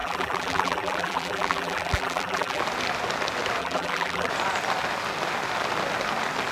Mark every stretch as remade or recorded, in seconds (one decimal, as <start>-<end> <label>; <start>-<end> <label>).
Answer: 0.0-2.6 remade; 2.6-3.6 recorded; 3.6-4.3 remade; 4.3-6.5 recorded